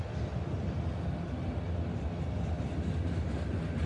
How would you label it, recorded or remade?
recorded